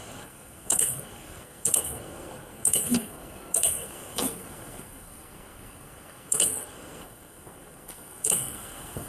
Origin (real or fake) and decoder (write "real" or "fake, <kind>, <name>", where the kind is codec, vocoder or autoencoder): fake, codec, SNAC